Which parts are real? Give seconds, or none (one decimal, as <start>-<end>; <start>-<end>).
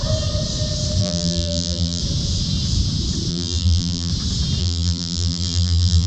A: 0.0-1.0; 2.0-3.3; 4.1-4.6